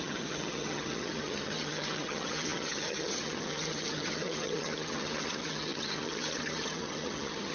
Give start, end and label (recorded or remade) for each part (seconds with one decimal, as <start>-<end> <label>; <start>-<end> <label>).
0.0-7.5 remade